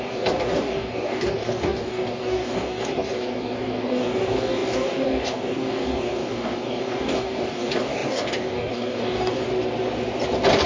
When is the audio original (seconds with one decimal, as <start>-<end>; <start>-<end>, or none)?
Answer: 9.5-10.7